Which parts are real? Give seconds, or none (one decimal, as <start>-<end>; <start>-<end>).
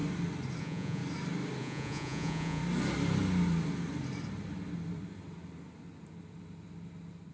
0.0-0.6; 1.0-1.6; 2.6-7.3